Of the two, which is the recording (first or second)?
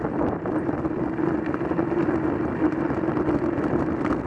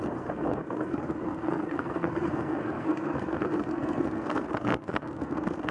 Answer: first